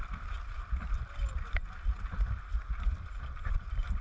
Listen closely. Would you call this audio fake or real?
real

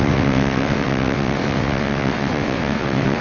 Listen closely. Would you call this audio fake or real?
fake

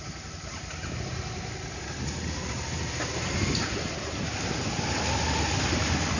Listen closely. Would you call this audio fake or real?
real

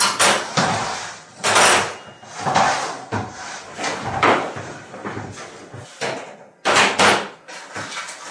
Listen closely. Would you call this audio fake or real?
real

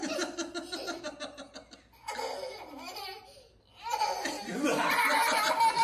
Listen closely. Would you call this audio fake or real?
real